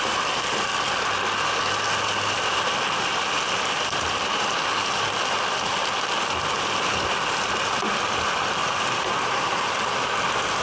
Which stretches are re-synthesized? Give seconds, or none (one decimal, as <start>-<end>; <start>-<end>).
8.6-9.7